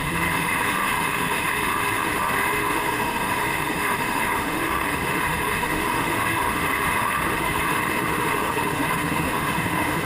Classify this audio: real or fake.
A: fake